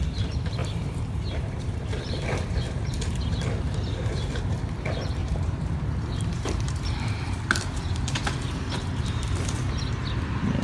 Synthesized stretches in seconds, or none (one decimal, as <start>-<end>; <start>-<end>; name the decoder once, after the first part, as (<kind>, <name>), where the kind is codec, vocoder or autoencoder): 0.6-4.6 (vocoder, BigVGAN v2); 5.2-9.2